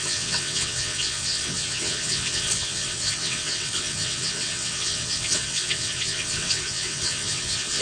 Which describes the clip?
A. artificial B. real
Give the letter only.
A